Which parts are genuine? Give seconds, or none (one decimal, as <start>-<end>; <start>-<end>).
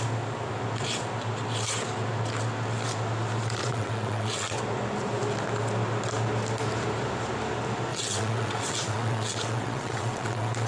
0.0-3.6; 4.6-7.9